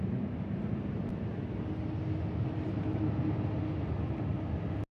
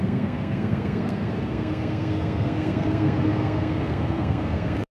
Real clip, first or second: first